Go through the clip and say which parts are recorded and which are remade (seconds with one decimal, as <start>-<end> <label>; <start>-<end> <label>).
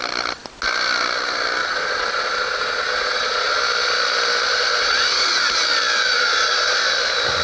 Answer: 0.0-1.6 recorded; 1.6-3.6 remade; 3.6-4.5 recorded; 4.5-5.4 remade; 5.4-6.0 recorded; 6.0-6.8 remade; 6.8-7.4 recorded